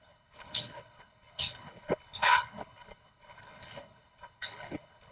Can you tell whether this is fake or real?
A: fake